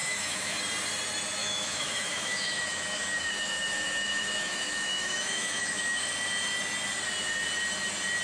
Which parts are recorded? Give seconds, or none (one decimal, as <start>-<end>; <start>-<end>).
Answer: 0.6-1.4; 6.1-8.2